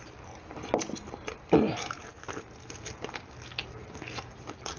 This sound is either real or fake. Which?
real